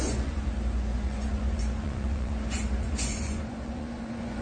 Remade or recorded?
remade